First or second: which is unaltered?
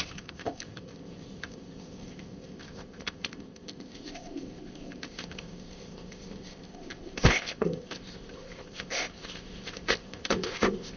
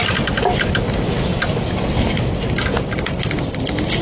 second